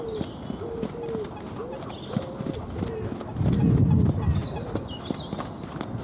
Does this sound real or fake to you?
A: real